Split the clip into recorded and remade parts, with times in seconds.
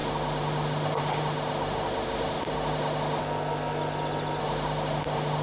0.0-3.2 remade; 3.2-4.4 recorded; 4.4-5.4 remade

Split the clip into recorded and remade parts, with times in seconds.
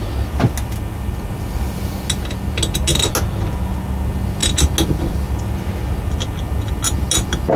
0.0-7.6 recorded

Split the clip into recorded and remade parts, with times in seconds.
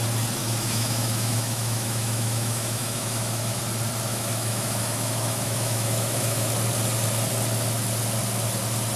0.0-0.4 recorded; 0.4-3.6 remade; 3.6-4.1 recorded; 4.1-6.5 remade; 6.5-9.0 recorded